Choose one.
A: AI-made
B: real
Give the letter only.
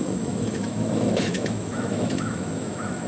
A